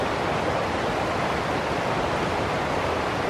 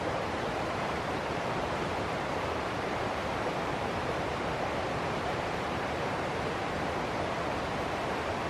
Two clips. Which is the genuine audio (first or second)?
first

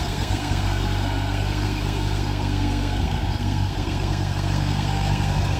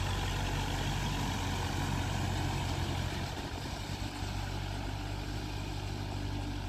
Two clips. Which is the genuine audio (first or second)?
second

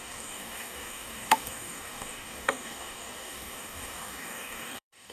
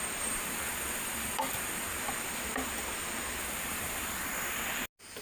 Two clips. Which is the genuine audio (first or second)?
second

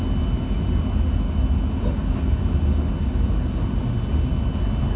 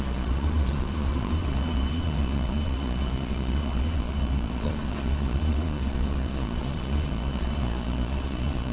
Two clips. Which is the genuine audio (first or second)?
first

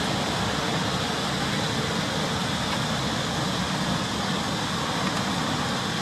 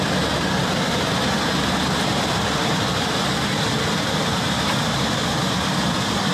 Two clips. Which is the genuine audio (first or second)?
first